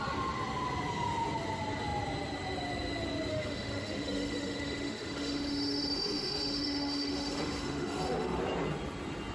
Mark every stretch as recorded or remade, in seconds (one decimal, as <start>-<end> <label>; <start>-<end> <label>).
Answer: 0.0-3.3 recorded; 3.3-8.4 remade; 8.4-9.3 recorded